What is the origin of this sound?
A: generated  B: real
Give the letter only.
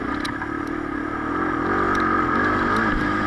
B